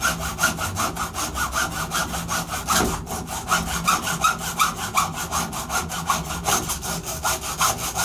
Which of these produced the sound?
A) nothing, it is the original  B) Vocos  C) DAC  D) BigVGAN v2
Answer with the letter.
A